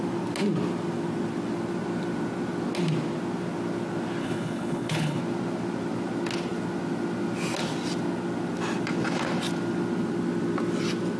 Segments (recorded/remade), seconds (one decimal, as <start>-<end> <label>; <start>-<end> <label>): 0.0-4.2 recorded; 4.2-5.2 remade; 5.2-11.2 recorded